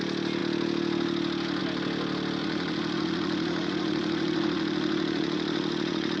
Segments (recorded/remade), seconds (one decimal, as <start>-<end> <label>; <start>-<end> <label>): 0.0-2.4 recorded; 2.4-6.2 remade